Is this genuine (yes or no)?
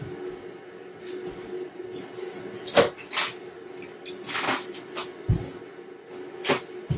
yes